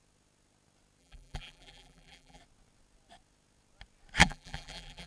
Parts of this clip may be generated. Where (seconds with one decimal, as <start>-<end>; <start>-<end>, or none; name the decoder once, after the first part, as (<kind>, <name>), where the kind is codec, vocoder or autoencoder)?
1.0-2.4 (vocoder, BigVGAN v2); 4.2-5.1